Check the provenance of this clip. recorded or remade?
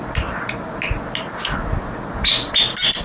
recorded